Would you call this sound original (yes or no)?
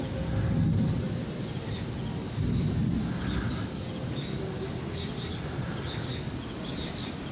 yes